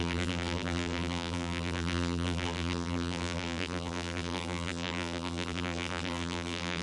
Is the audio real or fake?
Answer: fake